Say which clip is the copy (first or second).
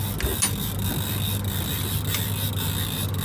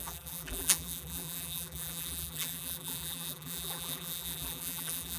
second